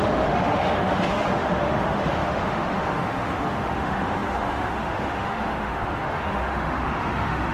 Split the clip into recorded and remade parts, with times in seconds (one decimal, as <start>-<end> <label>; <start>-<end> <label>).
0.0-7.5 remade